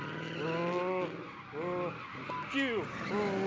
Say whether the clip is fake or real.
real